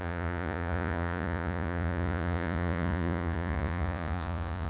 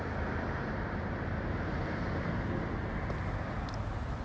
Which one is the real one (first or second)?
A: second